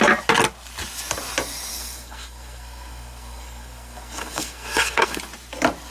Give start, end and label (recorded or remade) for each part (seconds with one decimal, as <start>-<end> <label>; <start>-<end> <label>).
0.0-1.7 recorded; 1.7-5.2 remade; 5.2-5.9 recorded